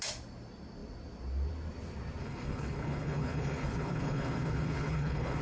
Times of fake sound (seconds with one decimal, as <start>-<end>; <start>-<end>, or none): 2.2-5.4